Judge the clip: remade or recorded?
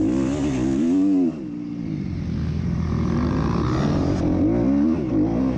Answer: recorded